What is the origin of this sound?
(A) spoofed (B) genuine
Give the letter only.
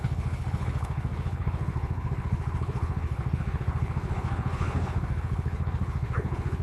A